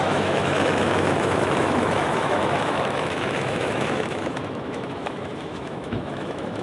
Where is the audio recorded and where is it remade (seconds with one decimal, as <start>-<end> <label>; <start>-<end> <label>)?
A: 0.0-6.6 remade